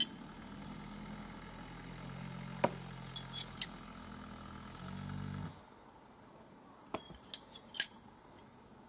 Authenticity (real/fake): real